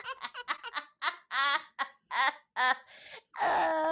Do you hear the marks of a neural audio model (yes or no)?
no